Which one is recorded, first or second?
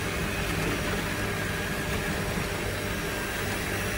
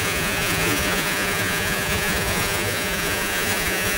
first